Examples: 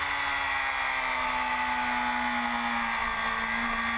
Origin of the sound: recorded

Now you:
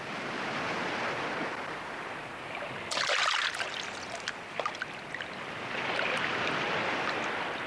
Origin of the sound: recorded